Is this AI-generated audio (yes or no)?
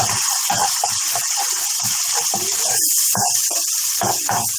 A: no